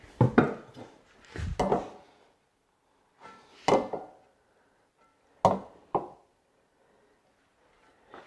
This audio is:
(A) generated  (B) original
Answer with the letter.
B